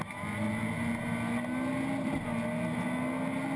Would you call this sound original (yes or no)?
yes